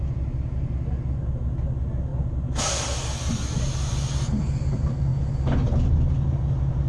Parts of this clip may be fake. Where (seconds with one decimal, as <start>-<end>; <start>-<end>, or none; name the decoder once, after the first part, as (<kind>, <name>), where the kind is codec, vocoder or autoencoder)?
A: none